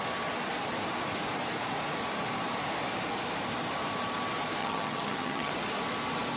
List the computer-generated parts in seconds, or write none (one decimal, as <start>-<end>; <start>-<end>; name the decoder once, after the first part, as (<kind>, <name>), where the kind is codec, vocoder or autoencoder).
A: 4.6-5.5 (vocoder, HiFi-GAN)